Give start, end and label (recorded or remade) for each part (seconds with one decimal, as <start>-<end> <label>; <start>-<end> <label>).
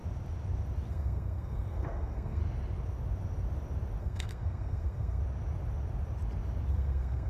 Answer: 0.0-0.9 recorded; 0.9-2.4 remade; 2.4-4.0 recorded; 4.0-5.2 remade; 5.2-6.7 recorded; 6.7-7.3 remade